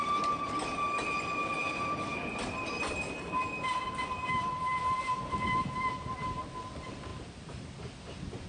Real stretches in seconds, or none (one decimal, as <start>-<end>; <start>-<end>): 0.0-8.5